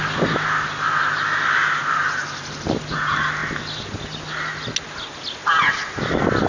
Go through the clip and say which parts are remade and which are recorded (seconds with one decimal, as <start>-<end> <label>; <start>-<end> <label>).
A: 0.0-1.8 recorded; 1.8-2.8 remade; 2.8-6.5 recorded